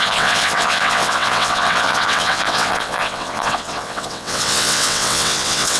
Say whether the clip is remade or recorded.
remade